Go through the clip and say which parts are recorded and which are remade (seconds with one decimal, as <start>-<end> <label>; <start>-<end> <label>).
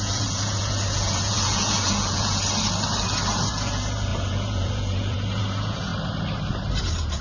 0.0-2.4 remade; 2.4-3.5 recorded; 3.5-5.9 remade; 5.9-6.8 recorded; 6.8-7.2 remade